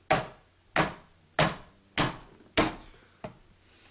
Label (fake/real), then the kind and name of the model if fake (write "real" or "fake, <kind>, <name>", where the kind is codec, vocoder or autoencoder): real